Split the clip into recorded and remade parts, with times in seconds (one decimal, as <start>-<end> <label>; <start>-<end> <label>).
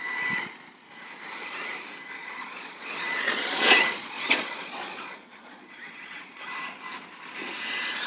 0.0-2.2 recorded; 2.2-6.4 remade; 6.4-8.1 recorded